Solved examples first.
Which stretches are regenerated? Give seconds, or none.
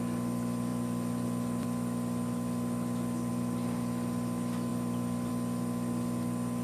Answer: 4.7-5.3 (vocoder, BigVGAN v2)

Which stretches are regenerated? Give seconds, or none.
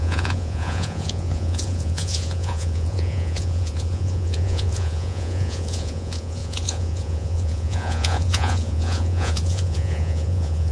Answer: 0.0-10.7 (vocoder, Vocos)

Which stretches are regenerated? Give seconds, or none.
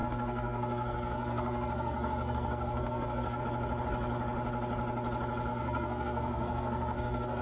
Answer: 0.0-3.4 (codec, SNAC); 5.5-7.4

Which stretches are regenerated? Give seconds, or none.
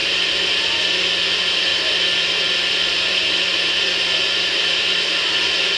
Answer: 0.0-0.7 (vocoder, BigVGAN v2); 1.7-5.2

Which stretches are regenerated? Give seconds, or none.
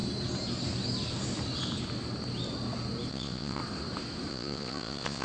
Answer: 3.1-3.6 (vocoder, Vocos); 4.3-5.2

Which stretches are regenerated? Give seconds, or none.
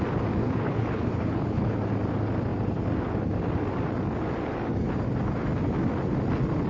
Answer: 0.4-1.7 (codec, HILCodec)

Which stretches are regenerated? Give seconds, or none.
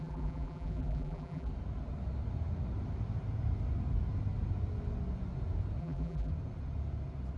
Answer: 0.0-1.5 (vocoder, BigVGAN v2); 5.8-6.3